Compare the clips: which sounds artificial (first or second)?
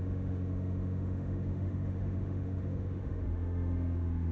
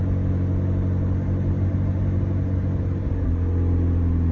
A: first